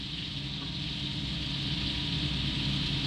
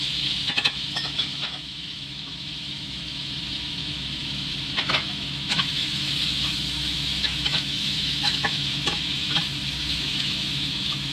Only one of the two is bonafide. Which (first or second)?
first